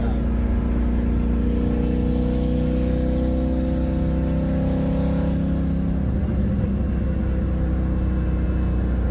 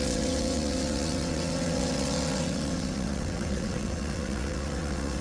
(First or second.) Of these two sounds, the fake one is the second